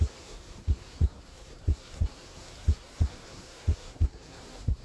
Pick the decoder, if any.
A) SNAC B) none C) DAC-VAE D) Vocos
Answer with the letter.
A